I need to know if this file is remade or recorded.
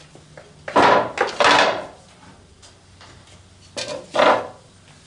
recorded